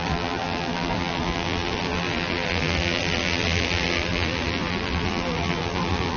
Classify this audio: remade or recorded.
remade